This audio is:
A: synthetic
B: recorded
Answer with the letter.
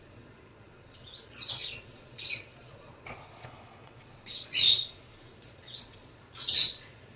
A